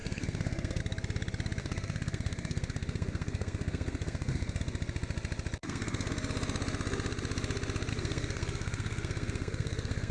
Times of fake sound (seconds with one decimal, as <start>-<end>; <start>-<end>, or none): 0.0-0.8; 1.6-4.6; 5.6-6.1; 7.9-10.1